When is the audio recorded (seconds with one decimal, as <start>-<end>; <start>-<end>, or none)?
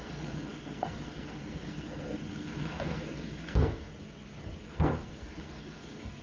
3.9-4.6